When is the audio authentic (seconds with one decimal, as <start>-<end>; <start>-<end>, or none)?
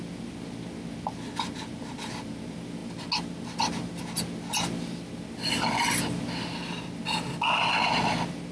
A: 0.0-8.5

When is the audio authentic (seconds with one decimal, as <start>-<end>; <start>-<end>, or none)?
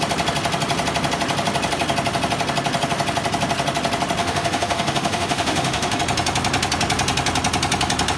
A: 0.0-4.2; 6.0-8.2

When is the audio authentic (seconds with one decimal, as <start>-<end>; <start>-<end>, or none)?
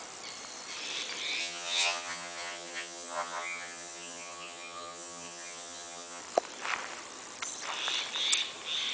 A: 0.0-1.4; 6.2-8.9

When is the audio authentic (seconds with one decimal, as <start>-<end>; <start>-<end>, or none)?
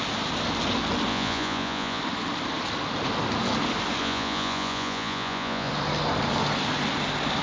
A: 0.0-1.1; 2.0-4.0; 5.7-7.4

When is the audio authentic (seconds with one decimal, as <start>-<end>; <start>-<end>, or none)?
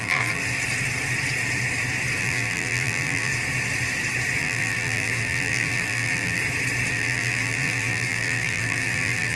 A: 0.4-2.2; 3.3-4.4; 6.4-6.9